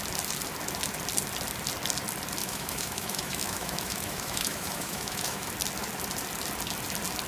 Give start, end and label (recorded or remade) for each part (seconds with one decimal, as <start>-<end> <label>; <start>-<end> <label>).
0.0-2.4 recorded; 2.4-5.5 remade; 5.5-7.3 recorded